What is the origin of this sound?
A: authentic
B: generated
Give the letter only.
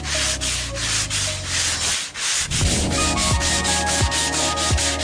A